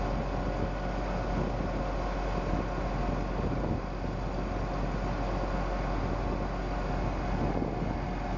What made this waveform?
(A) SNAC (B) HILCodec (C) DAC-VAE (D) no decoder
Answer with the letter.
D